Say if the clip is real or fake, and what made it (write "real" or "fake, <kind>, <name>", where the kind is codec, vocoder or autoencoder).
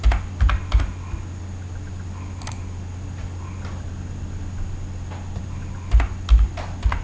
real